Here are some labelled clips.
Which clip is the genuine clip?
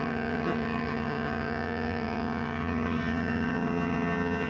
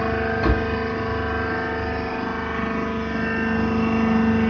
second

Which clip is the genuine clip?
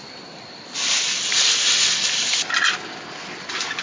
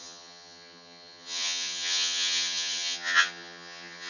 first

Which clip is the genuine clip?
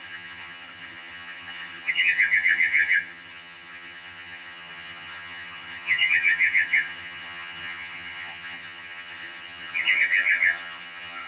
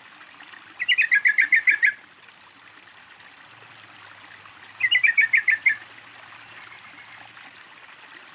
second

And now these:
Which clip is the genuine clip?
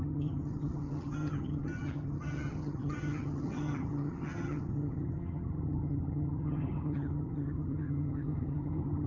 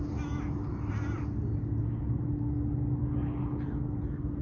second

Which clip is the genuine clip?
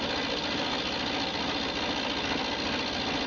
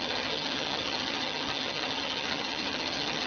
first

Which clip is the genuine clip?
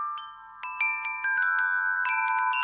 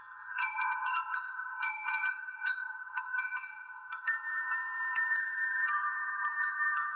first